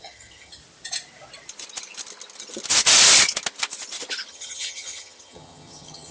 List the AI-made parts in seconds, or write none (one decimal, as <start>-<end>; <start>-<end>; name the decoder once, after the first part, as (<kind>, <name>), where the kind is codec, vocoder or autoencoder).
0.0-0.6 (vocoder, HiFi-GAN); 4.3-6.1